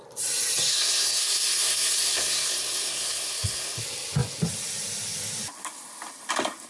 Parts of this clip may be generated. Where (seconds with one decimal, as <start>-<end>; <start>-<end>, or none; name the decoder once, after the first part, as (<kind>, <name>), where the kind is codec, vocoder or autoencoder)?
0.7-3.8 (codec, SNAC)